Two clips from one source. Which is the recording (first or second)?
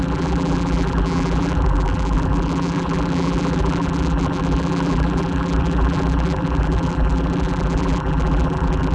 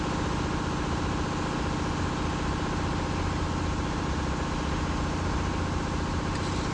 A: second